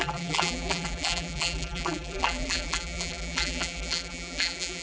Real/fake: fake